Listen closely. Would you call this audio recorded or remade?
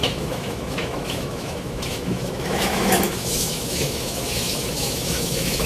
remade